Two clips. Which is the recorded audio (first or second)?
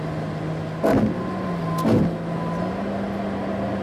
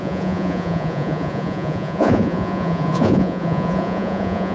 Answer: first